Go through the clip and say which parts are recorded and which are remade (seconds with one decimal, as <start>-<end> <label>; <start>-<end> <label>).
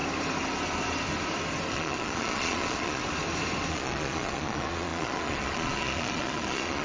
0.0-1.7 recorded; 1.7-3.0 remade; 3.0-3.7 recorded; 3.7-6.8 remade